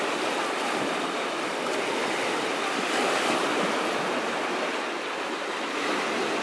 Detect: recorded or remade recorded